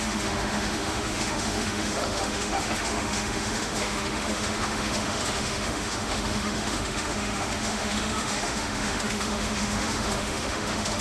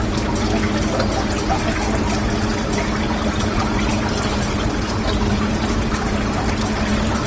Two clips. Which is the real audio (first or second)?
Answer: second